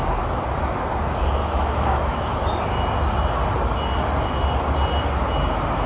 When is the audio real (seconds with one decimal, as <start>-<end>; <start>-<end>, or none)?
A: 0.0-1.4; 2.4-5.9